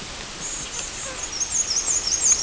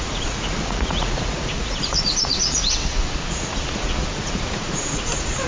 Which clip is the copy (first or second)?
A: second